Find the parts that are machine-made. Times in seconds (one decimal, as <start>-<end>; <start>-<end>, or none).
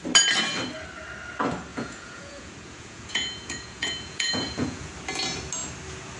1.7-4.9